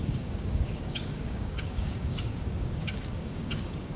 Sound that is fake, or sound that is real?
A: fake